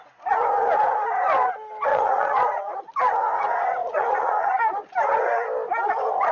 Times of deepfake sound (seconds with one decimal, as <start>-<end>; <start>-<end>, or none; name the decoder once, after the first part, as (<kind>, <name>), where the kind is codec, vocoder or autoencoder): 1.9-2.8 (vocoder, Vocos); 3.8-4.6